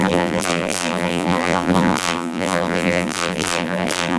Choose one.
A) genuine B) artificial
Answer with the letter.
B